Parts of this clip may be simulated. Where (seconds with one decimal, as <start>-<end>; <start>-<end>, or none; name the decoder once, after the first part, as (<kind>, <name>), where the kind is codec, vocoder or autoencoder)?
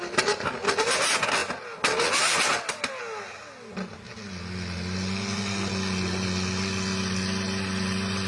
none